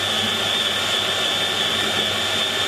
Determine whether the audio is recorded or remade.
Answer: recorded